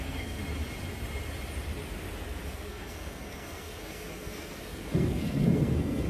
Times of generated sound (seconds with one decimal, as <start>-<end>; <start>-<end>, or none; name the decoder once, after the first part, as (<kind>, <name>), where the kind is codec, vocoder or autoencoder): 0.0-0.4 (codec, SNAC); 2.5-6.1